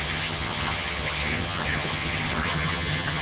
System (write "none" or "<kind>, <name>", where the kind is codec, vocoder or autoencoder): vocoder, HiFi-GAN